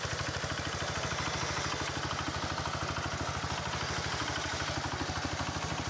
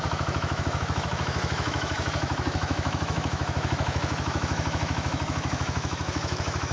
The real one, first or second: first